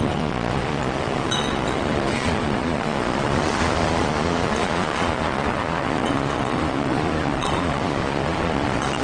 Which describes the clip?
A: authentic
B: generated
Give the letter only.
B